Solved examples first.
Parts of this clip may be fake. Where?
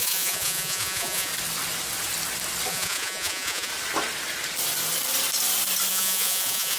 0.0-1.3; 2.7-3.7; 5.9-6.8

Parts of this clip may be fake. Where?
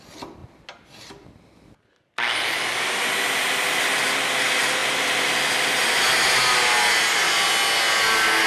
4.8-5.7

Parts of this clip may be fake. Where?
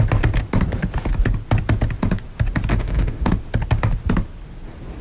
2.7-3.3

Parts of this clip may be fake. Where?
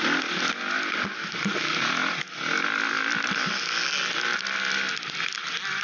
none